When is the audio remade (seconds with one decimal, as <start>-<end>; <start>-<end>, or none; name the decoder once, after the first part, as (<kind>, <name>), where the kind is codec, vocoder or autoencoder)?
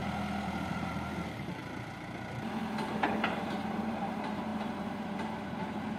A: 0.7-1.6 (vocoder, BigVGAN v2); 2.9-6.0